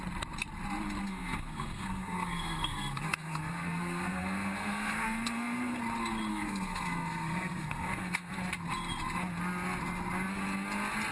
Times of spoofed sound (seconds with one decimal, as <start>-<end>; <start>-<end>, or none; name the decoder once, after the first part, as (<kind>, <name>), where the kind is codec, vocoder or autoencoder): 1.0-5.8 (codec, SNAC); 6.3-8.3